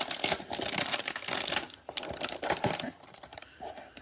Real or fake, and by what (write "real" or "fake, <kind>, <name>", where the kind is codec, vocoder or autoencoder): real